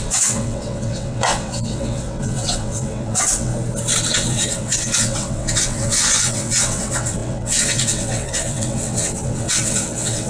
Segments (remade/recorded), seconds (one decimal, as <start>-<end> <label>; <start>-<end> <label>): 0.0-3.5 remade; 3.5-4.1 recorded; 4.1-10.3 remade